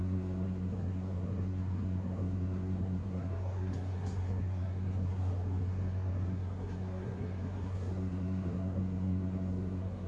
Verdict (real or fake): fake